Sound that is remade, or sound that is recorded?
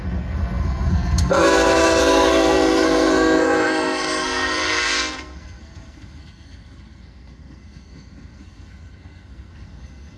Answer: remade